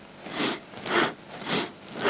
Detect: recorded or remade recorded